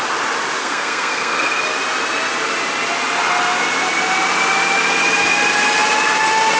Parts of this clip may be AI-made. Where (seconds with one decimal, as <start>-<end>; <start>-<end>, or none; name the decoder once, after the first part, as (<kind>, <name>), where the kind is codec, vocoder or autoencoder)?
0.6-1.6 (codec, SNAC)